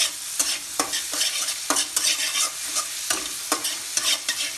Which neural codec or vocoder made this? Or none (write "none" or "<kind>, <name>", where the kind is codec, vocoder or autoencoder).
none